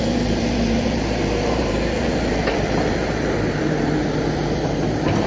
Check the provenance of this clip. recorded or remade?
remade